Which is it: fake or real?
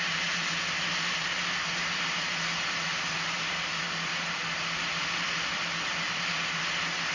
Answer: real